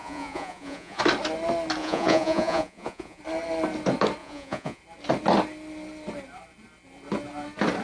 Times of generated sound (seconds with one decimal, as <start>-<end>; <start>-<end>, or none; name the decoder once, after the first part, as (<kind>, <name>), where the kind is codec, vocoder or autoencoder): 0.0-1.0 (vocoder, Vocos); 1.8-3.2; 4.2-4.8